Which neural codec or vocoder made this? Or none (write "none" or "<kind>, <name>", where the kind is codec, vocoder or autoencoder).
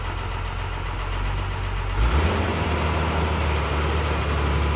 none